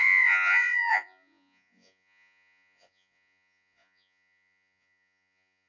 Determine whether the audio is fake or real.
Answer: fake